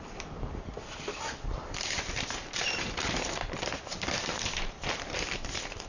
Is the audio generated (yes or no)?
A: yes